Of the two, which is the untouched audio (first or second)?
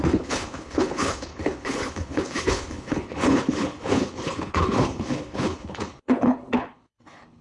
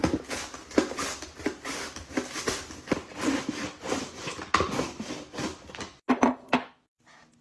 second